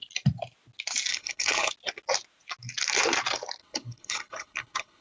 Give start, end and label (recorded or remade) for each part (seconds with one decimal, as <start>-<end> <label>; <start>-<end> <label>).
0.0-1.1 recorded; 1.1-1.7 remade; 1.7-3.6 recorded; 3.6-5.0 remade

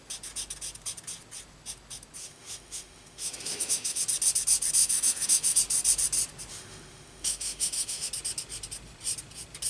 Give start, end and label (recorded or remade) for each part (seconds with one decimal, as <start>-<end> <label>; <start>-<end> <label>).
0.0-2.2 recorded; 2.2-4.0 remade; 4.0-4.8 recorded; 4.8-5.6 remade; 5.6-6.5 recorded; 6.5-8.1 remade; 8.1-9.7 recorded

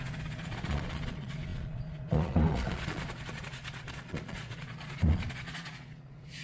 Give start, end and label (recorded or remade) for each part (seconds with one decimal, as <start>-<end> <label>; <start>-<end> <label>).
0.0-6.4 remade

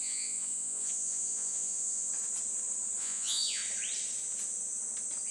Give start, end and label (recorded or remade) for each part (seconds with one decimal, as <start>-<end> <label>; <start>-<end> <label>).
0.0-2.1 remade; 2.1-3.0 recorded; 3.0-3.6 remade; 3.6-5.3 recorded

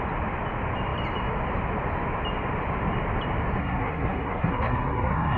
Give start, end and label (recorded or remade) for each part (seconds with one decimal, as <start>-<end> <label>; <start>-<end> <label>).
0.0-3.6 recorded; 3.6-5.4 remade

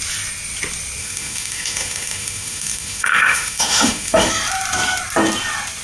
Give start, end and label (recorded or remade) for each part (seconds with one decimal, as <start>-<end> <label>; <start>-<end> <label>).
0.0-1.0 recorded; 1.0-4.3 remade; 4.3-5.8 recorded

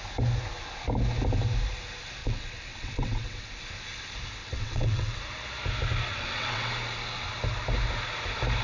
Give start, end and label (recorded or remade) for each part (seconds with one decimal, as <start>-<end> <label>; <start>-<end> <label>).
0.0-2.2 recorded; 2.2-3.6 remade; 3.6-4.4 recorded; 4.4-5.2 remade; 5.2-6.1 recorded; 6.1-6.7 remade; 6.7-8.6 recorded